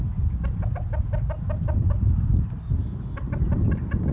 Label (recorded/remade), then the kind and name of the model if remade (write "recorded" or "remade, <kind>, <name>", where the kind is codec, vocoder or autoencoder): recorded